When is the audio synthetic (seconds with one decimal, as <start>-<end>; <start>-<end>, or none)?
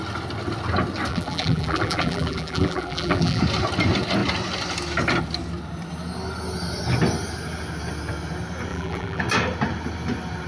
1.1-3.4; 8.7-9.2